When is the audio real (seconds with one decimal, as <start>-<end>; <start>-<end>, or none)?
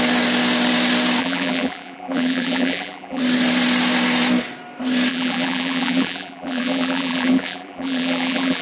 0.0-1.2; 3.2-5.1